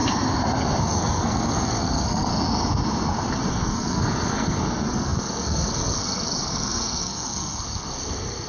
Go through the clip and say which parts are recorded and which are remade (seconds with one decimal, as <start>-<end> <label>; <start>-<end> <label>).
0.0-0.8 recorded; 0.8-2.3 remade; 2.3-3.5 recorded; 3.5-8.5 remade